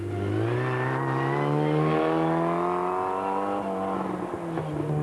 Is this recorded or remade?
recorded